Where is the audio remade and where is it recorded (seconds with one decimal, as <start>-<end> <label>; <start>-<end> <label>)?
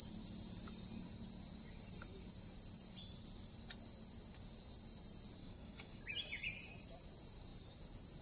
0.0-5.4 recorded; 5.4-6.0 remade; 6.0-8.2 recorded